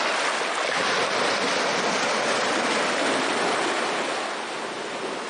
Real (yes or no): yes